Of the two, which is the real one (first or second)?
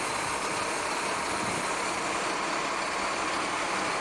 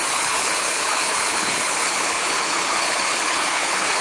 first